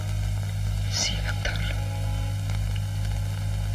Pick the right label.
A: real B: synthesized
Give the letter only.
A